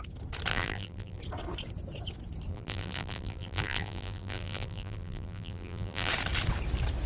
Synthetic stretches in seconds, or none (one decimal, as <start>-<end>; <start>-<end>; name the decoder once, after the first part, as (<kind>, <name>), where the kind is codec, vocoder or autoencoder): 0.5-1.2 (vocoder, BigVGAN v2); 2.5-6.1